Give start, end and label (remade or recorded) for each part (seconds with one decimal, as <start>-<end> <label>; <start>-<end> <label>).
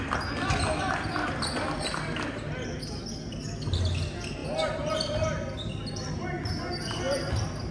0.0-7.7 recorded